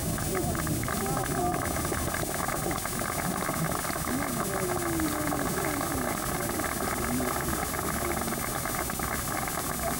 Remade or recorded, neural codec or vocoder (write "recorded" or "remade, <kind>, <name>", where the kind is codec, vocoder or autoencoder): recorded